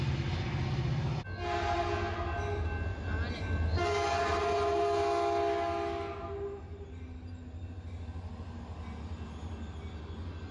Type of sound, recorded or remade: recorded